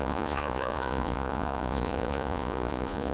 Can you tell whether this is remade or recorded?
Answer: remade